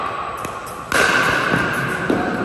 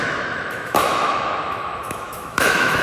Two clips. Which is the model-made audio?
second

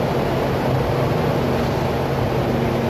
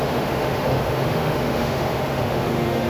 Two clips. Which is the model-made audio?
second